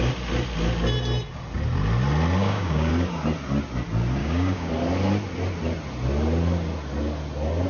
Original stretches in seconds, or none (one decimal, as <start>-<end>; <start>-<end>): 0.0-2.4; 2.9-4.2; 4.7-7.7

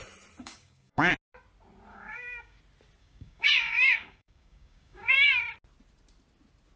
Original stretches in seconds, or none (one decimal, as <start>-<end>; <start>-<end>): 0.0-0.4; 1.1-1.9; 2.6-3.0; 5.4-6.8

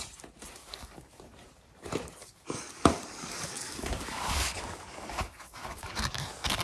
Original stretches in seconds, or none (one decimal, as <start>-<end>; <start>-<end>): 0.0-0.6; 1.2-2.2

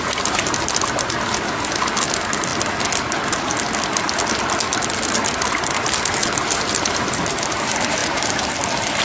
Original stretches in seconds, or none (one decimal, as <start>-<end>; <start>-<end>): 0.0-9.0